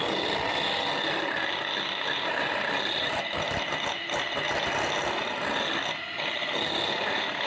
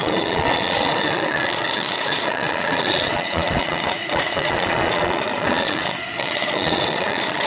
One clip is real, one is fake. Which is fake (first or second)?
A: second